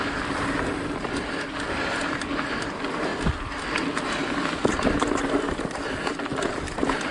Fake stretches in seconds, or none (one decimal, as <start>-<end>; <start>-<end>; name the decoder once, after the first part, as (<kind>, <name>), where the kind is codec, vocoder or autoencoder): 4.7-5.6 (vocoder, BigVGAN v2); 6.3-7.1